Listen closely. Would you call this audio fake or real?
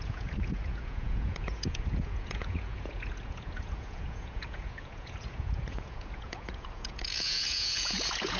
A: fake